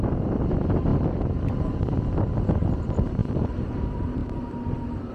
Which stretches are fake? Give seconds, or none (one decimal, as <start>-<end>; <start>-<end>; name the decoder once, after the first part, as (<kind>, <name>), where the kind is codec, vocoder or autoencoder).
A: 0.9-1.6 (vocoder, BigVGAN v2); 3.2-3.8